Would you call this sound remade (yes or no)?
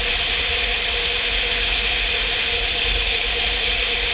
no